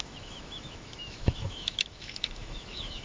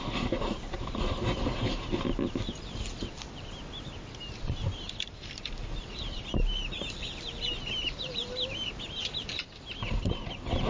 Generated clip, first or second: first